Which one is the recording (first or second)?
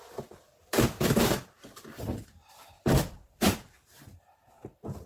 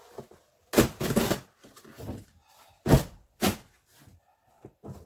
second